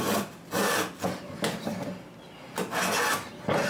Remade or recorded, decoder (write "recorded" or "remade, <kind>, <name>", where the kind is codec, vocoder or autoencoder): recorded